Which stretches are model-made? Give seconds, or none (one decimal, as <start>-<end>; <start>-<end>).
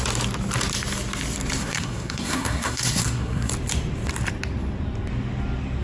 1.6-3.5